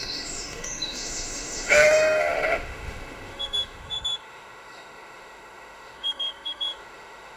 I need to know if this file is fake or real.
fake